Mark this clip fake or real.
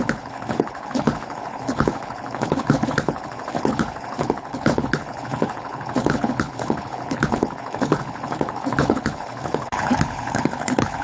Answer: fake